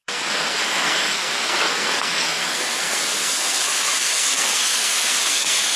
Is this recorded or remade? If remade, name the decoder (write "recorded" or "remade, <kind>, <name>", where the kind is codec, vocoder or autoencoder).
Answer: remade, codec, SNAC